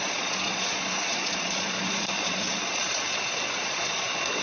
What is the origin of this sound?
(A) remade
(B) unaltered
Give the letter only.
A